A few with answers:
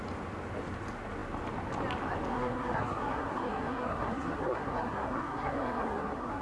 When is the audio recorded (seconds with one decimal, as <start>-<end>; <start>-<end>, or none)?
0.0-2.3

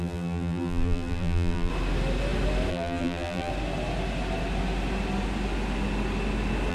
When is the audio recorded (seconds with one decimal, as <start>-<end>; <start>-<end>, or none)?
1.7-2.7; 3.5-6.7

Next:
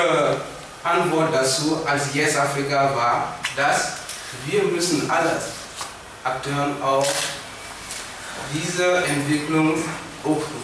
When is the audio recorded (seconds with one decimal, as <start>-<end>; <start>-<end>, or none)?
0.0-1.1; 2.3-3.2; 6.2-10.6

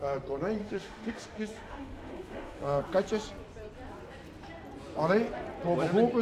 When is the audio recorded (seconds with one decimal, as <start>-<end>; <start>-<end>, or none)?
0.0-0.6; 2.8-6.2

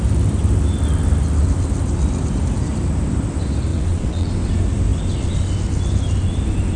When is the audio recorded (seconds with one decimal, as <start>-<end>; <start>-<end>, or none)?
0.0-3.7; 4.3-6.8

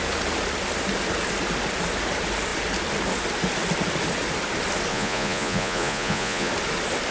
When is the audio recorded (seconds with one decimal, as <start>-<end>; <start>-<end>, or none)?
0.0-4.9; 6.5-7.1